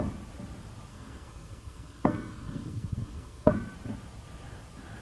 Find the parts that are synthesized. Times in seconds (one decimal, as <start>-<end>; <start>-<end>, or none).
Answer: 0.9-3.5